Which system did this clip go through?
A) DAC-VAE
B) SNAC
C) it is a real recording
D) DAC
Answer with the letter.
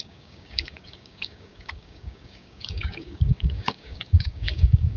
D